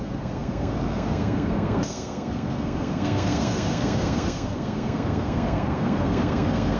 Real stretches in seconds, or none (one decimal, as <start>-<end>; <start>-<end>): none